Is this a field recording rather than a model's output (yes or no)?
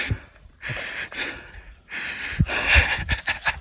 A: yes